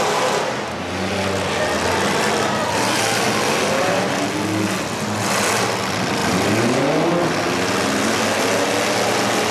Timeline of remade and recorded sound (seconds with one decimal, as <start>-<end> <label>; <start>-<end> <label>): 0.0-9.5 recorded